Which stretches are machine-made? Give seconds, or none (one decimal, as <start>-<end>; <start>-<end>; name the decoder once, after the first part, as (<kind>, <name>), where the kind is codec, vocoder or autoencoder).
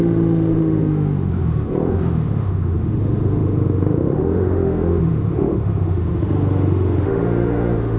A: 0.0-8.0 (autoencoder, DAC-VAE)